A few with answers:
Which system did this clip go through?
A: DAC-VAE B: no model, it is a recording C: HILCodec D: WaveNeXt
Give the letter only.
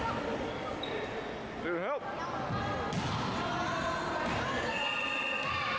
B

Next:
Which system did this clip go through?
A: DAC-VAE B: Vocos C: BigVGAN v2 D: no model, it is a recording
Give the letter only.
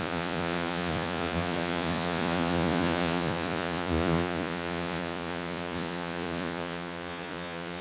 B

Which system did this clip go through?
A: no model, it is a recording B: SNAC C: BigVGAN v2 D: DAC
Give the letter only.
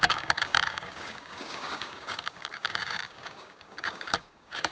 D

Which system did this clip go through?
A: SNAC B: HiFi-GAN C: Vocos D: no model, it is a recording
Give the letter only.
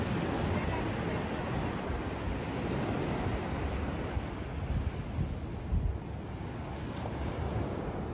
D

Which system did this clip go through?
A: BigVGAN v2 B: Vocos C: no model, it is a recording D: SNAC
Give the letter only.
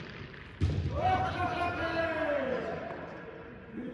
C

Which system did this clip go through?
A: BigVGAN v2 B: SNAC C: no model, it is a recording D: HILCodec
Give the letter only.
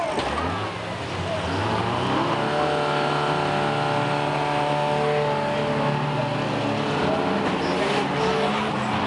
C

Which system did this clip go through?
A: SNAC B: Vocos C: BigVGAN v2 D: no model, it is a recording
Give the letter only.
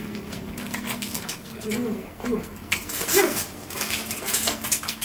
A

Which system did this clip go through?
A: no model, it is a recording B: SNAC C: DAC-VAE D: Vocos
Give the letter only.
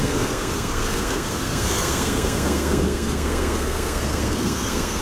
B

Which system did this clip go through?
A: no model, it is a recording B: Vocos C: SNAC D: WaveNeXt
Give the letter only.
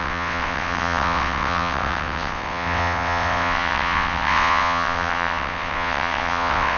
D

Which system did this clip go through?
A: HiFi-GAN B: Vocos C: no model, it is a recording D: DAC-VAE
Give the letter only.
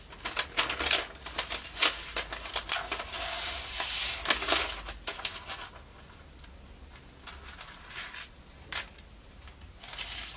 C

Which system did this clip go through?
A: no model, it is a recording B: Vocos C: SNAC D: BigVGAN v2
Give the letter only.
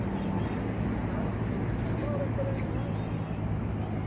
A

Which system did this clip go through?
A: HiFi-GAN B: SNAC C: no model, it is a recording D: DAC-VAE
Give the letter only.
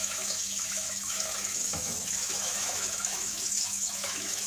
D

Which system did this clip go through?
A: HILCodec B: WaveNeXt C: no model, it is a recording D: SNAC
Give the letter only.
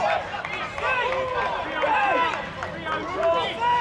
C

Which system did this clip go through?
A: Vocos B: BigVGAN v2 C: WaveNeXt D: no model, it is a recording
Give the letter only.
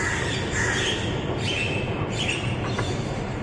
B